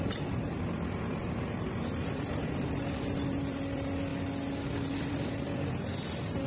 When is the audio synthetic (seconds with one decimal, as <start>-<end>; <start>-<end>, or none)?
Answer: 0.0-4.1; 4.9-6.5